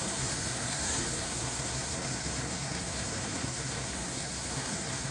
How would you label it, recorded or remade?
remade